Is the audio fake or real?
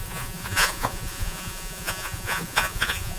fake